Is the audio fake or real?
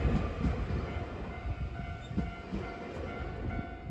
real